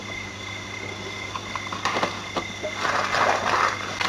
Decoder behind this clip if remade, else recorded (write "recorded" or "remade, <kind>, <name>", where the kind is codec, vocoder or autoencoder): recorded